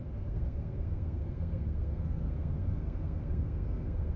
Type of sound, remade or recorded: remade